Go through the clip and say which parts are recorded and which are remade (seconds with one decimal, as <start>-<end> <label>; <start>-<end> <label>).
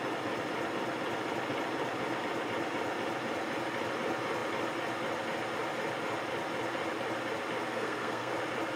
0.0-7.7 recorded; 7.7-8.3 remade; 8.3-8.8 recorded